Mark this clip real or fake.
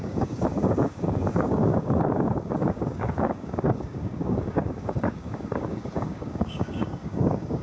fake